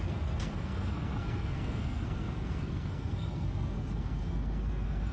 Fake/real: fake